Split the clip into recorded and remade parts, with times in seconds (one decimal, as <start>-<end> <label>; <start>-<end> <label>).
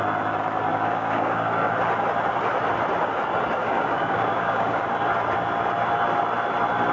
0.0-0.7 recorded; 0.7-1.7 remade; 1.7-3.6 recorded; 3.6-4.8 remade; 4.8-6.9 recorded